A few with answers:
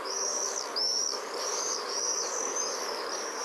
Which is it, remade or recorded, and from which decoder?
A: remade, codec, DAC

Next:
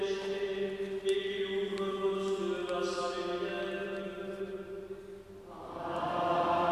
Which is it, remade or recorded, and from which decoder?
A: recorded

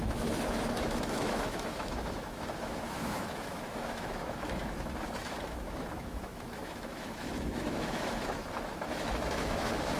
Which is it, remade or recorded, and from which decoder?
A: remade, autoencoder, DAC-VAE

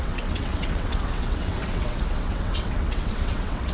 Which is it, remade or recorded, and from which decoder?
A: remade, vocoder, WaveNeXt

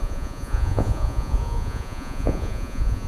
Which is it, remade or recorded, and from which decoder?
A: remade, vocoder, Vocos